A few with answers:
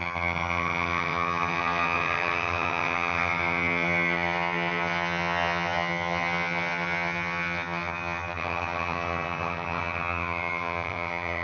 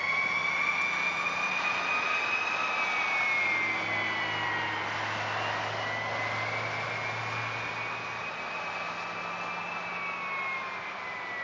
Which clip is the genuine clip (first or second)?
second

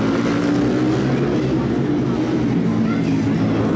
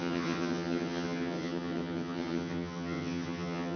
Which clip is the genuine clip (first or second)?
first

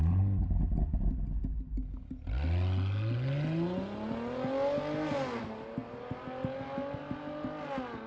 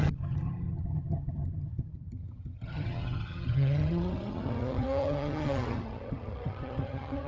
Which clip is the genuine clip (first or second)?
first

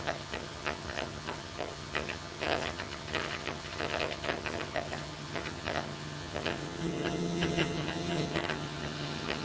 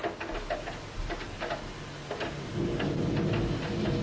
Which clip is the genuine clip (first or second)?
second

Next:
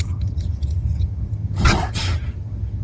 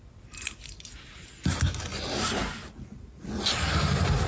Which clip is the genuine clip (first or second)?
second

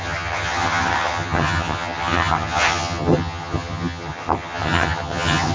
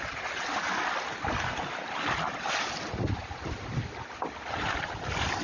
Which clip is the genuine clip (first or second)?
second